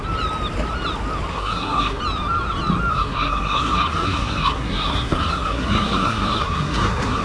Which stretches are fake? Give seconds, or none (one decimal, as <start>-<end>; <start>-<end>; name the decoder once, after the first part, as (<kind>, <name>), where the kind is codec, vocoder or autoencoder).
1.3-2.0 (codec, SNAC); 2.9-7.2